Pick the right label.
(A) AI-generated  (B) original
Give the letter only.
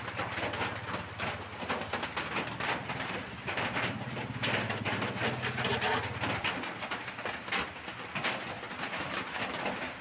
B